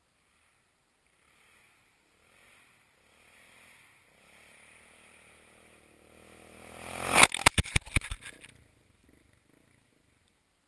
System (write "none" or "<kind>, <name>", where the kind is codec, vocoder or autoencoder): none